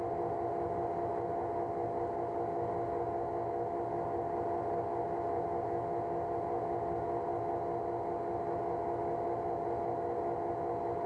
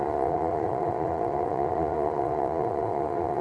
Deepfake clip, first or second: second